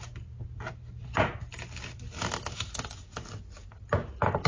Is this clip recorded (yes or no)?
yes